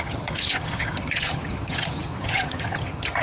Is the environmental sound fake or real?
fake